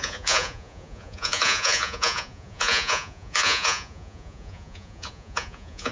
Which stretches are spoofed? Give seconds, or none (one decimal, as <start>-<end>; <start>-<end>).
0.0-5.9